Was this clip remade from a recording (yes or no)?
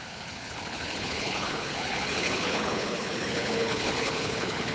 yes